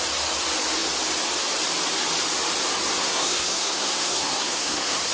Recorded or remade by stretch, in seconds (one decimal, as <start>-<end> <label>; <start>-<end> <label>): 0.0-3.0 recorded; 3.0-5.1 remade